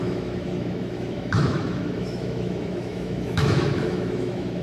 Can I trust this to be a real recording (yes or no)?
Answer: no